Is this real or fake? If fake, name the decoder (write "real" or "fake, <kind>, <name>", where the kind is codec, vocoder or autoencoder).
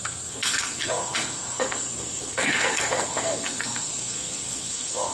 fake, codec, SNAC